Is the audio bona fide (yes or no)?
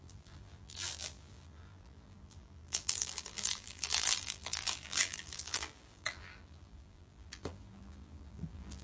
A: no